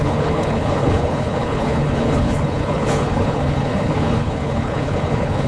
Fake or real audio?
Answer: fake